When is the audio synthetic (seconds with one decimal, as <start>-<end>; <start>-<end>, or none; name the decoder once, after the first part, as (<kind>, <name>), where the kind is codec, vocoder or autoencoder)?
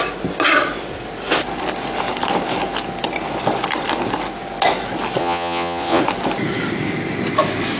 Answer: 5.2-6.0 (vocoder, Vocos)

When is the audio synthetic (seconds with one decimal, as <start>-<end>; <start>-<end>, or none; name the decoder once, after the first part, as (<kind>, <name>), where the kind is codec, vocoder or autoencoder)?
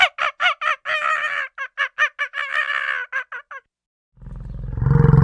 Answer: none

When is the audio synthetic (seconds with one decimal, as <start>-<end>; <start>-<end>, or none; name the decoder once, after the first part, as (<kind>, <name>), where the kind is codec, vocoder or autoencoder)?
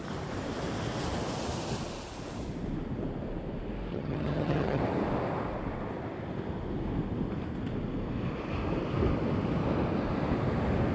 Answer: 3.9-4.8 (vocoder, HiFi-GAN)